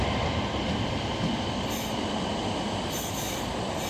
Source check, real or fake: real